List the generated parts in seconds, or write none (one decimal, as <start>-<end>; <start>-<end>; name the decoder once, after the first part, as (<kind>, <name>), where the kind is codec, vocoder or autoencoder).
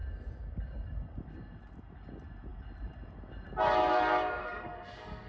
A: 4.4-5.3 (codec, SNAC)